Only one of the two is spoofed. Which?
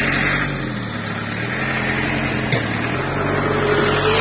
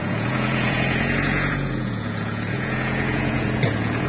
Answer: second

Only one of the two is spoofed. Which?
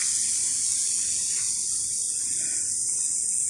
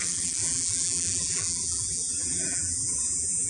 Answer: second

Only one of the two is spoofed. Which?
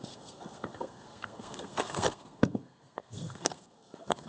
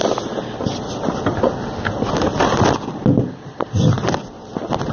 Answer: first